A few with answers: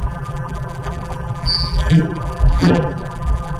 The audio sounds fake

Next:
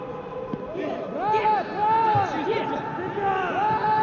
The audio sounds real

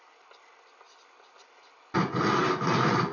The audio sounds real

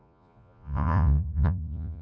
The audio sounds fake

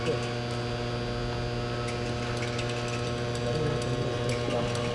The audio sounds real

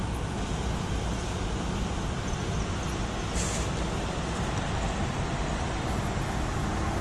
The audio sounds real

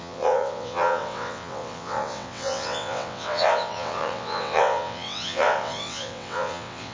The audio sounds fake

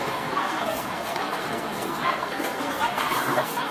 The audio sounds fake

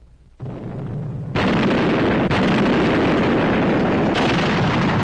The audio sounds real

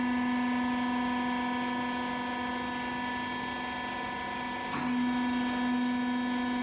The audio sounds real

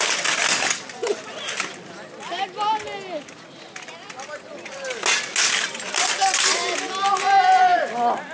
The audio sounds real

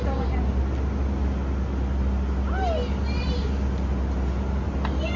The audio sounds real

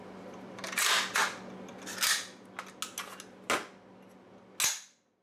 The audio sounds real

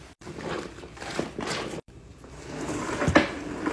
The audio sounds fake